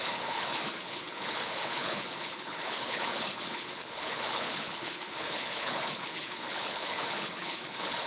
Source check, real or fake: fake